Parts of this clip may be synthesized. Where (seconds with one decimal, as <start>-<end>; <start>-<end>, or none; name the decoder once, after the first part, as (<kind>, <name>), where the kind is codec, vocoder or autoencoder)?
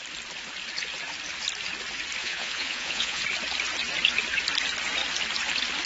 2.2-3.2 (vocoder, Vocos)